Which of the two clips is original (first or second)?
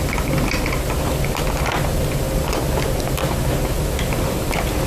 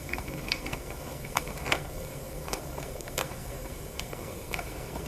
first